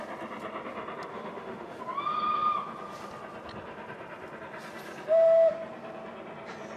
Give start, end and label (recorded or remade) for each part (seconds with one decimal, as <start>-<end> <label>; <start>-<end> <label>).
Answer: 0.0-1.1 recorded; 1.1-1.8 remade; 1.8-6.8 recorded